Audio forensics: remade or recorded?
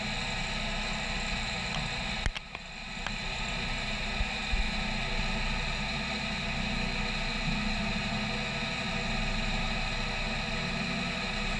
recorded